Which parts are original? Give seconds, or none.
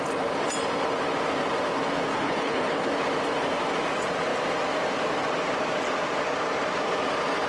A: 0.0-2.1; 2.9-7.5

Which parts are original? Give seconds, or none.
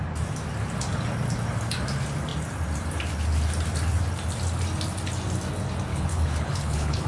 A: 0.0-5.9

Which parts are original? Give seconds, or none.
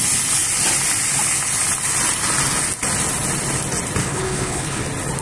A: 0.0-4.0; 4.8-5.2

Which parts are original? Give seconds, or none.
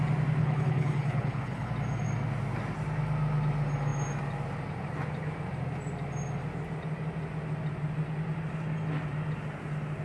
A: 0.0-0.4; 1.7-10.0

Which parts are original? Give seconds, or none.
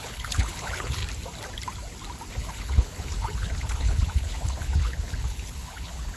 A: 1.0-2.3